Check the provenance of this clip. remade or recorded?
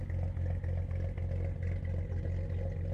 recorded